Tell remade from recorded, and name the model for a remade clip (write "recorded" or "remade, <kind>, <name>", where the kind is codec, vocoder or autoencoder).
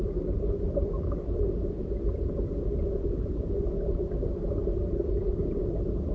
recorded